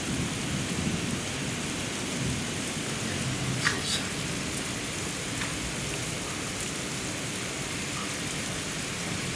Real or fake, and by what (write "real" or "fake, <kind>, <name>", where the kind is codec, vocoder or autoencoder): real